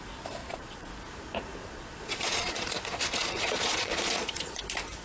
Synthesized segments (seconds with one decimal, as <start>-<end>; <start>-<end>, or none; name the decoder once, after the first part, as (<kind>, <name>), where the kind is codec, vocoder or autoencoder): 0.4-0.9 (vocoder, Vocos); 1.6-4.6